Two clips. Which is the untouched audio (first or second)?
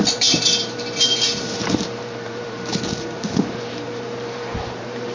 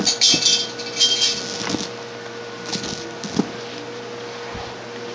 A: second